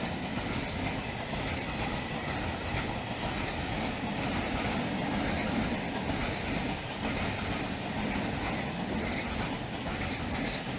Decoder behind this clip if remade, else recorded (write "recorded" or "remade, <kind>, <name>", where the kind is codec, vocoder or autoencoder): recorded